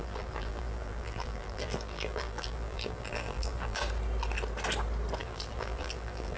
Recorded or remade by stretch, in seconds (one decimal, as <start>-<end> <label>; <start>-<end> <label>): 0.0-3.8 remade; 3.8-5.2 recorded; 5.2-6.4 remade